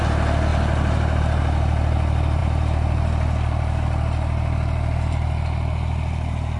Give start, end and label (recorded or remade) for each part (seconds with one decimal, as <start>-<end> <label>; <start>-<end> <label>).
0.0-6.6 recorded